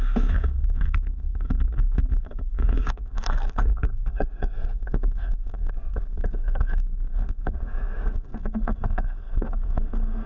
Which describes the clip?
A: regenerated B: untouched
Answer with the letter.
A